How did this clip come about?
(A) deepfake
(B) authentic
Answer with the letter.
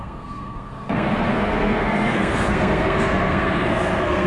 A